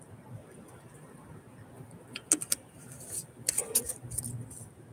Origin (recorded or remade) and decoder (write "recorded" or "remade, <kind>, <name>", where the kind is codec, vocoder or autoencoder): recorded